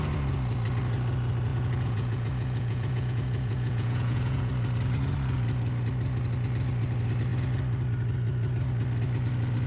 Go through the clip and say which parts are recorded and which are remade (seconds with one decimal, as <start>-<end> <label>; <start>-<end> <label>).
0.0-1.5 recorded; 1.5-4.5 remade; 4.5-9.7 recorded